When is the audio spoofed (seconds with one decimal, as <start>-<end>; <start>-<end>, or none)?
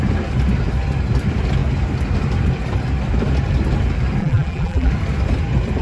4.2-4.9